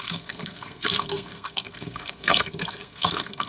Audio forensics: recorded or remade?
remade